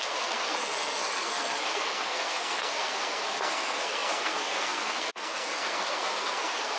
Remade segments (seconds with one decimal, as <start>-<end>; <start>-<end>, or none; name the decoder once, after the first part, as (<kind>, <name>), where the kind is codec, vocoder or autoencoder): 0.0-6.8 (codec, SNAC)